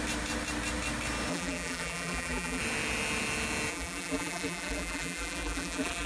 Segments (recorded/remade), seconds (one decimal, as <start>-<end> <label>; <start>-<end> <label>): 0.0-1.3 recorded; 1.3-2.6 remade; 2.6-3.7 recorded; 3.7-6.1 remade

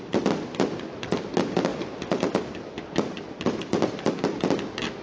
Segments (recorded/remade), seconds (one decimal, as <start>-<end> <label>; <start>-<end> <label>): 0.0-5.0 recorded

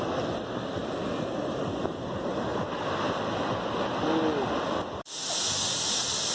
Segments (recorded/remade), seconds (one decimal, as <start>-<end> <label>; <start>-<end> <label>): 0.0-6.3 recorded